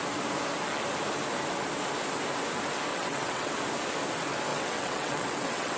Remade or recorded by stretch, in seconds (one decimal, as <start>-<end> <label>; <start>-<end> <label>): 0.0-2.9 recorded; 2.9-3.5 remade; 3.5-4.5 recorded; 4.5-5.8 remade